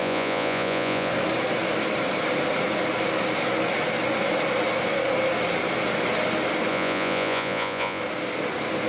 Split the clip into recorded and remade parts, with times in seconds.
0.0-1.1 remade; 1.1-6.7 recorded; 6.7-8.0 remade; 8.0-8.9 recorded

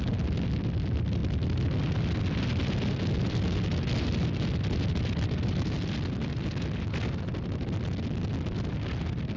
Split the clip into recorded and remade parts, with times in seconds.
0.0-9.4 recorded

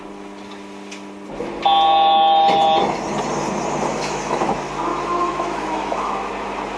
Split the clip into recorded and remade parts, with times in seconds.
0.0-3.9 recorded; 3.9-4.5 remade; 4.5-4.9 recorded; 4.9-6.3 remade; 6.3-6.8 recorded

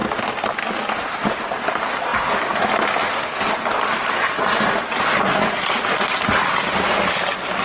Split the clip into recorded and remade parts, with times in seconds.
0.0-7.6 recorded

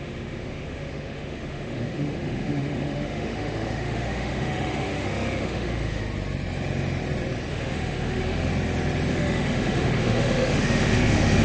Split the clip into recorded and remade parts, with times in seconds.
0.0-6.0 remade; 6.0-7.5 recorded; 7.5-8.5 remade; 8.5-9.1 recorded; 9.1-11.4 remade

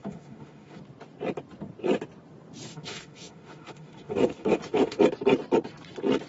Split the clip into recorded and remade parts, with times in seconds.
0.0-0.8 remade; 0.8-2.7 recorded; 2.7-5.0 remade; 5.0-6.3 recorded